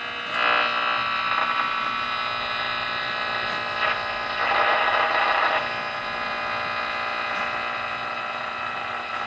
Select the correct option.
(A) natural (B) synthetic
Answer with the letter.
A